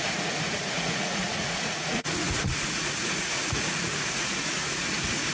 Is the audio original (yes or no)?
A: no